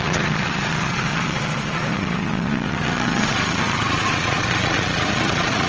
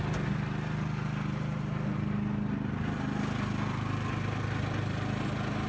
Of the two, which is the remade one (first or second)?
first